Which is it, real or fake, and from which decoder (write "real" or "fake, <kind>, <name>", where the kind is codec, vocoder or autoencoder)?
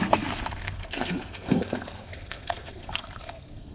fake, codec, SNAC